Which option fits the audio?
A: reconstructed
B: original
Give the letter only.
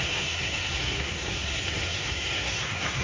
A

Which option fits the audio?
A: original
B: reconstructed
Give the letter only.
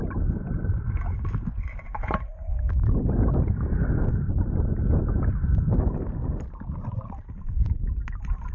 A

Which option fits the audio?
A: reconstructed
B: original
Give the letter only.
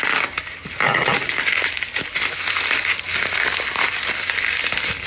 B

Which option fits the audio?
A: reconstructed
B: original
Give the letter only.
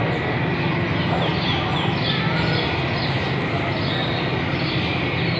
B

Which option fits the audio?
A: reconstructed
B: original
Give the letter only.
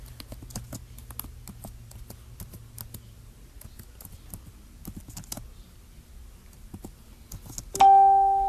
B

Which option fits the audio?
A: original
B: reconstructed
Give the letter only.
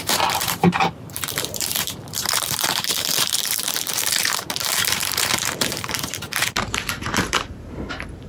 B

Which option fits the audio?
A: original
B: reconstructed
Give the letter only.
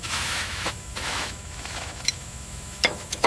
B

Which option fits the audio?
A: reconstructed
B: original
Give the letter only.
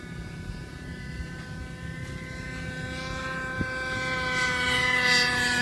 B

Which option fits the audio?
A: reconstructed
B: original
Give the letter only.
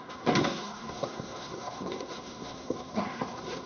A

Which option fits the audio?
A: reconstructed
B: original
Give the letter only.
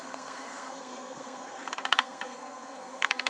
A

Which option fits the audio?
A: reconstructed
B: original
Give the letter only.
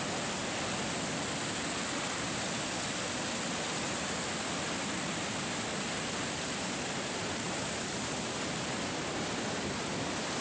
A